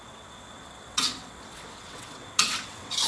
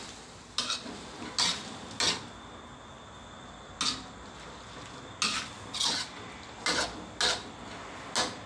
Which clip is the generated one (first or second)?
first